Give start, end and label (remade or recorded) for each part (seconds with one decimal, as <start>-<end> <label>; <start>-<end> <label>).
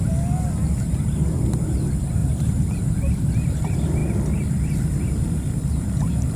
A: 0.0-6.4 recorded